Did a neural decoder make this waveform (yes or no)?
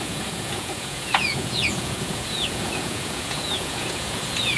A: yes